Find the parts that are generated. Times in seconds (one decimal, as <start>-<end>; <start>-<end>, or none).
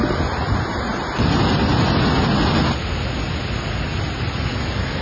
none